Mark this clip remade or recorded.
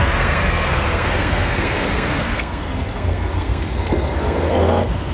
remade